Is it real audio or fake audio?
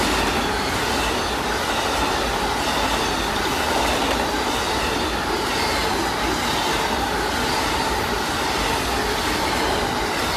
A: real